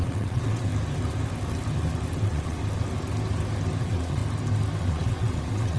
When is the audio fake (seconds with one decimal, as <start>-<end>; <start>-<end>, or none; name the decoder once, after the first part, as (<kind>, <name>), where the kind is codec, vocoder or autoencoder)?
0.0-0.7 (vocoder, WaveNeXt); 2.2-2.6; 3.8-4.2; 4.8-5.8